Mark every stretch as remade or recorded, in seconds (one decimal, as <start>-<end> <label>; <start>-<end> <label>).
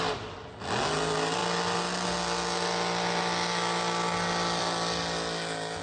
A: 0.0-5.8 recorded